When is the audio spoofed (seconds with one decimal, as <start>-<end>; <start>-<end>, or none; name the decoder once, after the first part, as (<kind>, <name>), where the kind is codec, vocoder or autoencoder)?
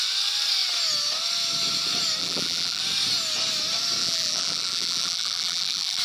2.2-2.8 (vocoder, BigVGAN v2); 4.0-6.0